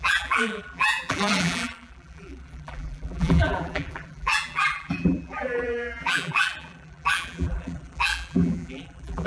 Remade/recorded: remade